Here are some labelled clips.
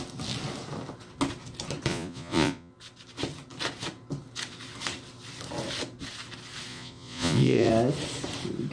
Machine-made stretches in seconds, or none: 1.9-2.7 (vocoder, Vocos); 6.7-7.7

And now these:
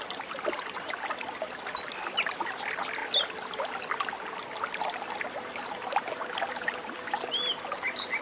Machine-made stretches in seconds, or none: none

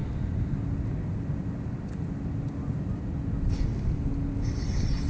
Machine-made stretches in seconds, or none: none

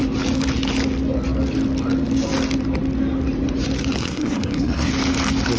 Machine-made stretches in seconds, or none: 4.0-4.9 (codec, SNAC)

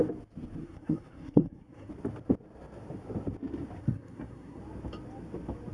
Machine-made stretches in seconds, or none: 0.6-1.9 (codec, SNAC); 3.8-4.6

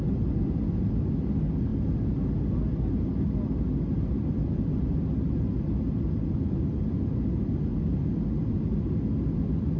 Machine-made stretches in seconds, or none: none

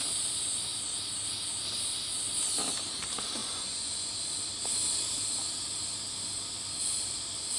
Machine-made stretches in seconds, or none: 3.4-4.1 (vocoder, Vocos)

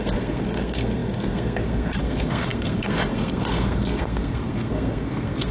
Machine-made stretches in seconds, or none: 0.0-5.5 (codec, SNAC)